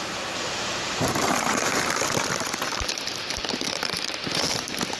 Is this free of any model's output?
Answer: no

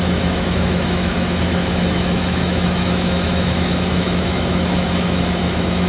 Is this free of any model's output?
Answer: no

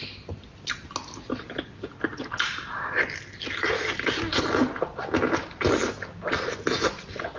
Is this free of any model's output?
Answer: yes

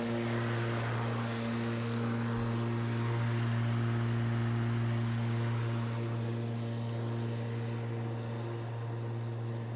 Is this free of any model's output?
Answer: yes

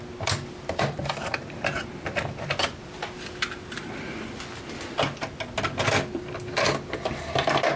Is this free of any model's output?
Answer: yes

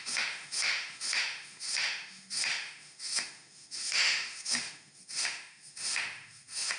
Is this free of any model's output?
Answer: no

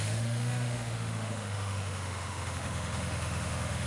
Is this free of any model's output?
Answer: no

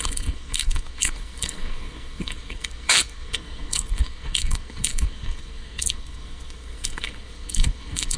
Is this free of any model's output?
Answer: no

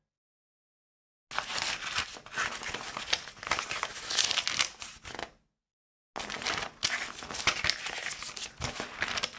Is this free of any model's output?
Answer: yes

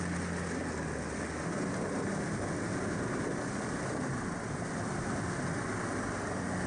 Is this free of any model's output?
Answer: yes